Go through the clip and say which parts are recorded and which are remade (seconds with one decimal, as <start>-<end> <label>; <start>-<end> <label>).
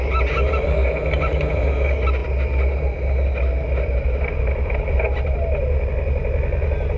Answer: 0.0-7.0 recorded